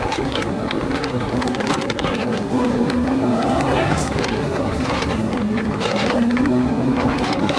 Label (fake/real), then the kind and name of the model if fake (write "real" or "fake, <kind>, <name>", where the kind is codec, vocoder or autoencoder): fake, codec, SNAC